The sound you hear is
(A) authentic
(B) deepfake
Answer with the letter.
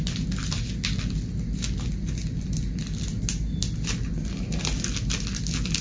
A